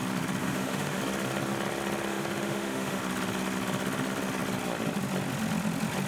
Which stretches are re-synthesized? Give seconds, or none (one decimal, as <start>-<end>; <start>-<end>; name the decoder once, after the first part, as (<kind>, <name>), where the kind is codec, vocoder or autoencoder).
0.4-1.0 (autoencoder, DAC-VAE); 2.1-3.0